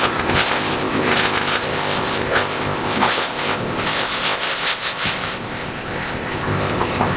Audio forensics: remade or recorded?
remade